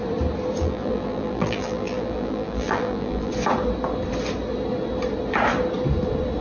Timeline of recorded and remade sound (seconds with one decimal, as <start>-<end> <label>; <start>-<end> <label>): 0.0-0.6 recorded; 0.6-3.3 remade; 3.3-6.4 recorded